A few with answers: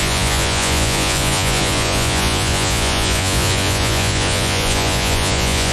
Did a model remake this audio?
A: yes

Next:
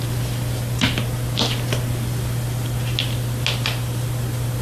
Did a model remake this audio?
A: no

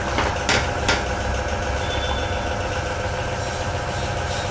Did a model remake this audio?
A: no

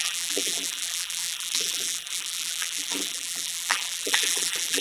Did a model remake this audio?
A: yes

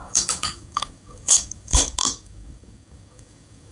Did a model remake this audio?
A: yes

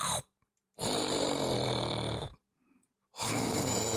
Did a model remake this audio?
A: yes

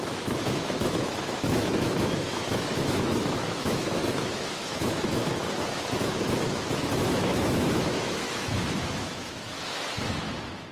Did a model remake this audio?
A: yes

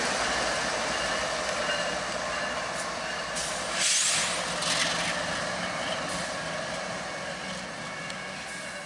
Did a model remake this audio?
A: no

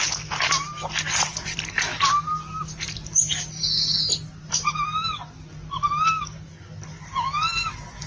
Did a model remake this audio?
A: no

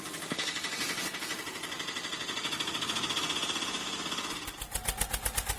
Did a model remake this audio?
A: no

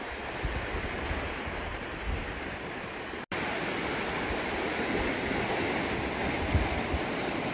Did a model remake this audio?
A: no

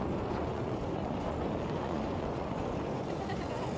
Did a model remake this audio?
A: yes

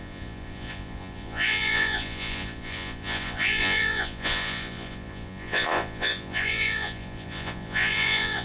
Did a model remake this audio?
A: yes